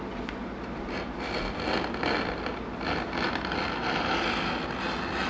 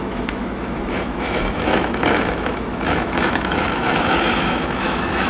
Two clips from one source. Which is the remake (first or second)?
second